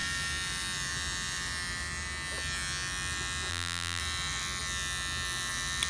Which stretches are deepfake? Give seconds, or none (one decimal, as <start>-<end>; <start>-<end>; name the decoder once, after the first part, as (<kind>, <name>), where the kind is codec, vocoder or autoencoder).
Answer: 3.5-4.0 (vocoder, BigVGAN v2)